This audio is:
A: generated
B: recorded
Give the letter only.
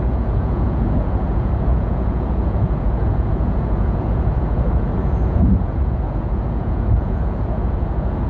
A